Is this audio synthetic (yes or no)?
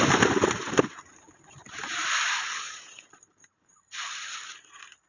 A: yes